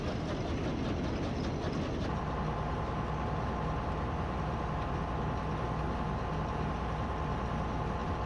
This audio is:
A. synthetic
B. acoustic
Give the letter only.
B